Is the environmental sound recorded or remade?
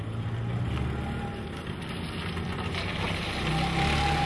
recorded